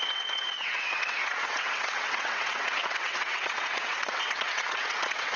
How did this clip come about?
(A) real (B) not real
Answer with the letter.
B